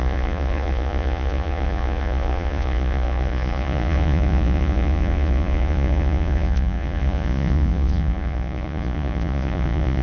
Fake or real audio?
fake